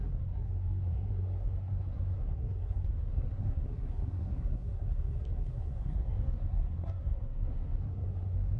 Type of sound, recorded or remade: remade